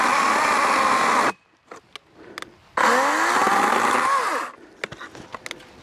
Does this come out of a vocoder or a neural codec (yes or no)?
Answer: no